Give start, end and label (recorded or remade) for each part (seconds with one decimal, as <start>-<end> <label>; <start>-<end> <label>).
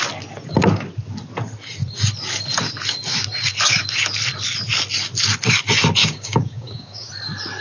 0.0-6.0 recorded; 6.0-7.1 remade; 7.1-7.6 recorded